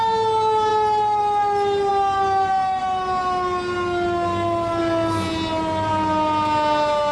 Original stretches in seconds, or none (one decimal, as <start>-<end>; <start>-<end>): 0.0-7.1